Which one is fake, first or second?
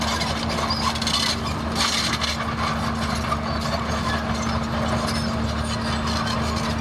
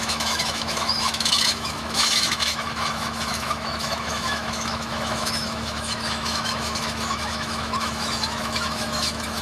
second